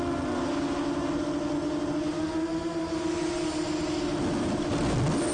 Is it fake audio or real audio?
real